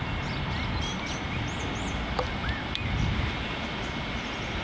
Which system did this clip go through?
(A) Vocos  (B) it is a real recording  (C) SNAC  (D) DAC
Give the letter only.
B